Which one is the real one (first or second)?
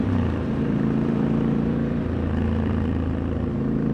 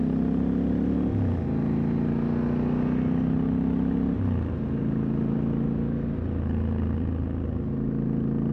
second